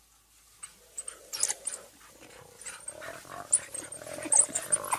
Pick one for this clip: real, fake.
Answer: fake